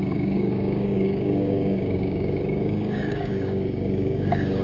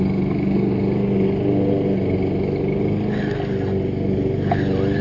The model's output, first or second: first